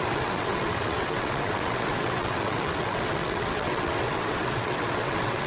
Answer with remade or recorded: remade